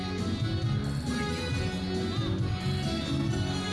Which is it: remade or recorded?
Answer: recorded